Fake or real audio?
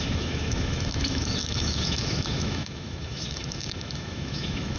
fake